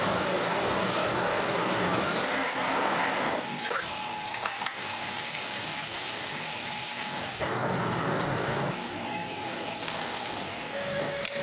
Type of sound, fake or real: fake